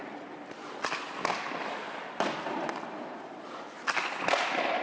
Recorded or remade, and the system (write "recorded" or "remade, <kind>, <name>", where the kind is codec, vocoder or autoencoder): recorded